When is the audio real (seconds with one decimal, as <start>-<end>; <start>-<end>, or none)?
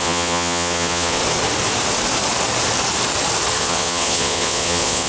1.2-3.6